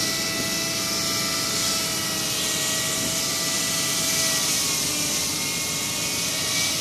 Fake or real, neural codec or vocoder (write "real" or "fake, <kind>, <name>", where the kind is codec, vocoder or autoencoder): real